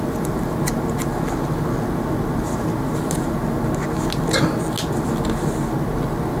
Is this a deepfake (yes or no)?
no